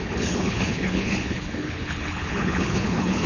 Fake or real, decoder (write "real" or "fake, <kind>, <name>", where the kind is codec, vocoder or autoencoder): fake, codec, HILCodec